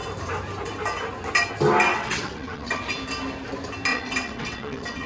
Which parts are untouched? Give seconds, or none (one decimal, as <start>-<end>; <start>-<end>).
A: 0.0-1.9; 2.8-3.9